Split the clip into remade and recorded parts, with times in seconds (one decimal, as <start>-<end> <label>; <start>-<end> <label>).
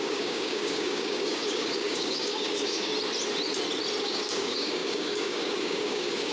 0.0-2.9 remade; 2.9-4.0 recorded; 4.0-6.3 remade